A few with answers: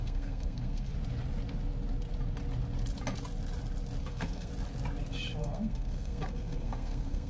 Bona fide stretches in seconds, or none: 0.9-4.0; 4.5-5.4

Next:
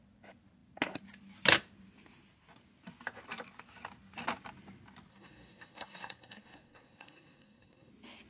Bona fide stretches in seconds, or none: 0.0-5.1; 7.9-8.3

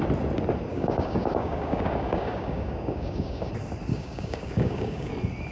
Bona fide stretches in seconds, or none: 0.0-0.7; 3.5-3.9; 5.1-5.5

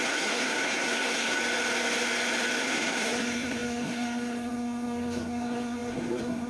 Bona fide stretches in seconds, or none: 1.4-2.6

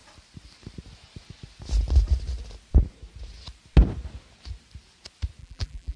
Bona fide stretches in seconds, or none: 0.0-5.4

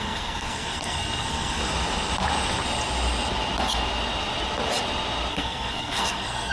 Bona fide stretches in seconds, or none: 1.6-5.3